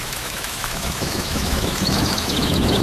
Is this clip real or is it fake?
fake